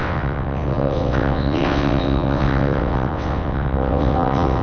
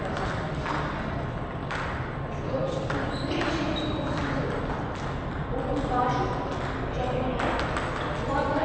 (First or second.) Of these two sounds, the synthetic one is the first